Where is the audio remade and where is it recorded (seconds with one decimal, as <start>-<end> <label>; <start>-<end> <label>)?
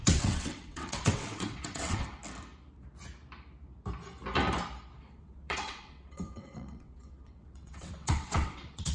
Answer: 0.0-2.2 remade; 2.2-5.0 recorded; 5.0-8.9 remade